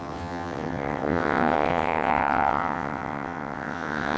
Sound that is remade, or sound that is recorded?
remade